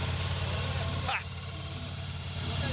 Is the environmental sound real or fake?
real